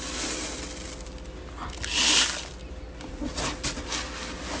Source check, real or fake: real